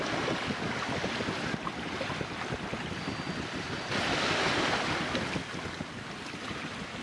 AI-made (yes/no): no